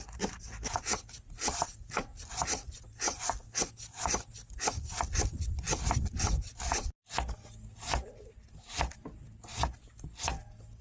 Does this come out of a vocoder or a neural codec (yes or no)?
no